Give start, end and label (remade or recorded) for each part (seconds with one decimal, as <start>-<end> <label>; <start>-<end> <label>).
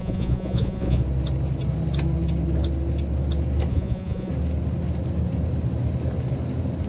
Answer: 0.0-1.0 remade; 1.0-3.7 recorded; 3.7-4.3 remade; 4.3-6.9 recorded